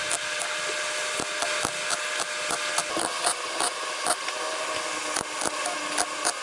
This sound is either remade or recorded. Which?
recorded